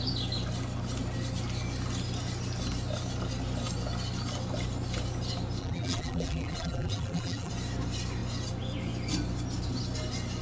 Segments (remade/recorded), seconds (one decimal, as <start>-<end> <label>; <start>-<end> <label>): 0.0-5.6 recorded; 5.6-7.5 remade; 7.5-10.4 recorded